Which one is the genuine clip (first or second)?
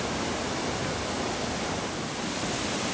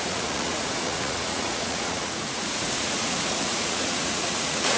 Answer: first